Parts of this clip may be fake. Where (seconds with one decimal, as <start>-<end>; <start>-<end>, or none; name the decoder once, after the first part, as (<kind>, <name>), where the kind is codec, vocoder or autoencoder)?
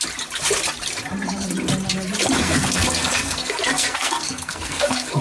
2.4-5.2 (codec, SNAC)